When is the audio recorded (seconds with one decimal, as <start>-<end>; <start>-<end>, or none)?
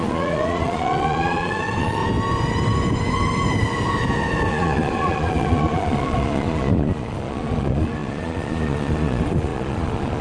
2.0-4.5